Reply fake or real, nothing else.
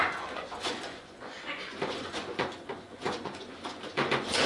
fake